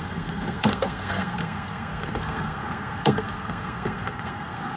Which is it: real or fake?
fake